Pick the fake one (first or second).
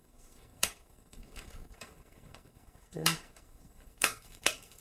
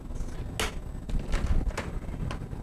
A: first